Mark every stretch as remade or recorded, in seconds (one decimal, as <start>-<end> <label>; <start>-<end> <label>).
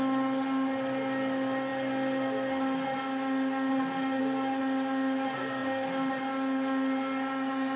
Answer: 0.0-7.8 recorded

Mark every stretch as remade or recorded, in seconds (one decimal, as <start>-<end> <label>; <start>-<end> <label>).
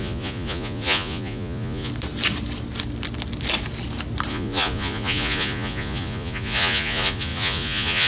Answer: 0.0-1.9 remade; 1.9-4.3 recorded; 4.3-8.1 remade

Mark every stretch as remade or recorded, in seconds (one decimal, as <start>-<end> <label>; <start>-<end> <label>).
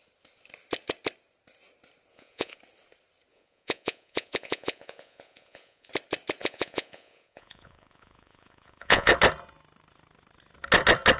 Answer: 0.0-2.1 recorded; 2.1-2.6 remade; 2.6-3.3 recorded; 3.3-5.9 remade; 5.9-6.4 recorded; 6.4-9.1 remade; 9.1-11.2 recorded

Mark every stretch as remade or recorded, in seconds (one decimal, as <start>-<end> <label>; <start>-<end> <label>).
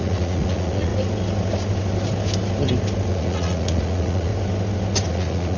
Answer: 0.0-0.9 remade; 0.9-3.1 recorded; 3.1-4.3 remade; 4.3-5.1 recorded; 5.1-5.6 remade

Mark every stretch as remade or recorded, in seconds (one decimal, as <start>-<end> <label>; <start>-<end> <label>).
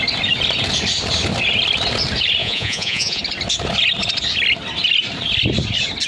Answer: 0.0-2.4 recorded; 2.4-3.2 remade; 3.2-6.1 recorded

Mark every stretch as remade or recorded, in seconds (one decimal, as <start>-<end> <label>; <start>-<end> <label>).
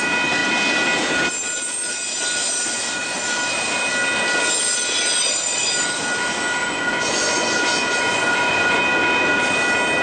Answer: 0.0-6.6 recorded; 6.6-8.8 remade; 8.8-10.0 recorded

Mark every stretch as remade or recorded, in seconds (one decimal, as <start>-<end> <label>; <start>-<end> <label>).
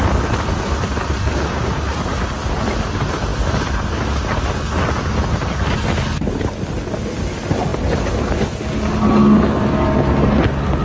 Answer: 0.0-10.8 recorded